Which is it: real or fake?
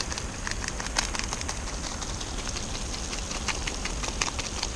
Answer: real